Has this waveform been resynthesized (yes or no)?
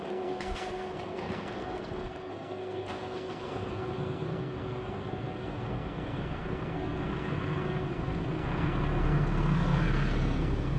yes